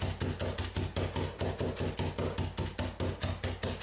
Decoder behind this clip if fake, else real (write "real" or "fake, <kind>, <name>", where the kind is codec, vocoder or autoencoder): real